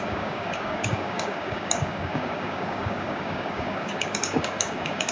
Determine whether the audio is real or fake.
fake